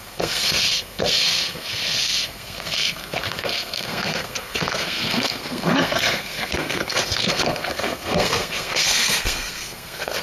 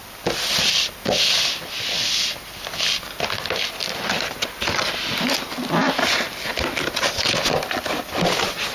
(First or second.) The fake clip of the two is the first